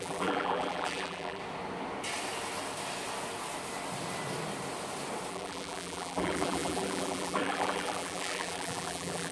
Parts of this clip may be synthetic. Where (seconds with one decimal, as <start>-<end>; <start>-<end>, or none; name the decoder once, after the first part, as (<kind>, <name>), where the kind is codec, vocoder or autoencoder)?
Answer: 0.0-1.4 (vocoder, BigVGAN v2); 5.3-9.3